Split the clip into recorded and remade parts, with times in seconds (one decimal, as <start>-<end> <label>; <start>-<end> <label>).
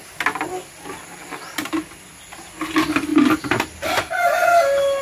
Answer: 0.0-3.1 recorded; 3.1-4.1 remade; 4.1-5.0 recorded